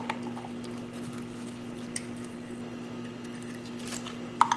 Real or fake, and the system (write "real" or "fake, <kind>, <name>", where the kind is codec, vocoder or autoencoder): real